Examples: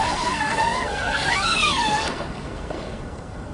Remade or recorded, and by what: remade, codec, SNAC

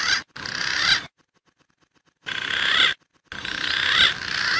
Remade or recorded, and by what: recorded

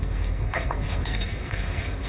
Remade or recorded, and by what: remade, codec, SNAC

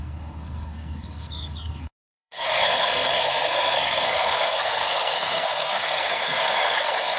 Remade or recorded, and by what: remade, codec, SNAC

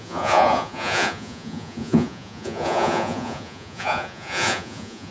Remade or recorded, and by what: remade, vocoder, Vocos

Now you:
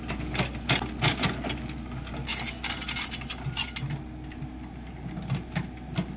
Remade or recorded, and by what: recorded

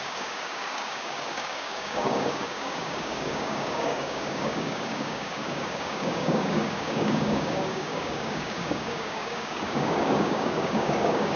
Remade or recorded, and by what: remade, codec, DAC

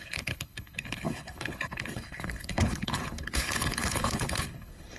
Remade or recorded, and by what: remade, codec, HILCodec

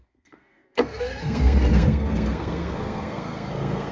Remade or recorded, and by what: remade, codec, SNAC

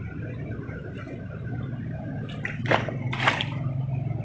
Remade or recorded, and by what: recorded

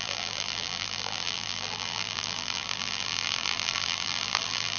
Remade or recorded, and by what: remade, vocoder, BigVGAN v2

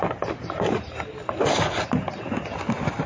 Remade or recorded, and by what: recorded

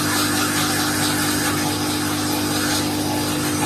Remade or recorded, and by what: recorded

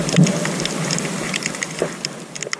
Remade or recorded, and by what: recorded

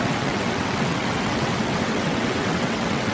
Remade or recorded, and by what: remade, vocoder, WaveNeXt